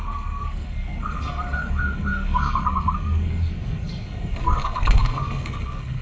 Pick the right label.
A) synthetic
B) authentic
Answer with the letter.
A